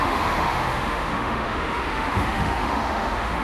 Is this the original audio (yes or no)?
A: no